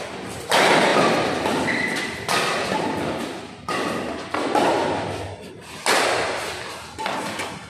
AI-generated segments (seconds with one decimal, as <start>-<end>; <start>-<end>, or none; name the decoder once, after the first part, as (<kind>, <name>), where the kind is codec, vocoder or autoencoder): 0.9-5.5 (vocoder, BigVGAN v2)